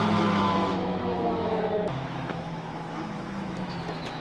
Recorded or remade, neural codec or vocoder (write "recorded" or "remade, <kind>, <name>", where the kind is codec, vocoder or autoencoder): remade, autoencoder, DAC-VAE